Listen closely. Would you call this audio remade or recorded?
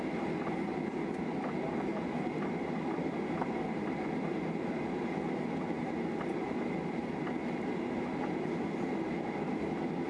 recorded